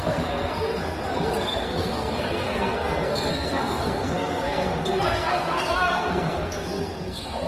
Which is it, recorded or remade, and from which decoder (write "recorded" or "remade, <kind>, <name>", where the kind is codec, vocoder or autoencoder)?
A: remade, codec, SNAC